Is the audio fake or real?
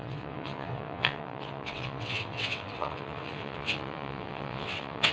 fake